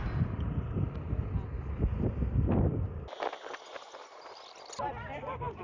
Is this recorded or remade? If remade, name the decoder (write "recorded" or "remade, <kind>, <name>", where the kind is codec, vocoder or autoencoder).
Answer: recorded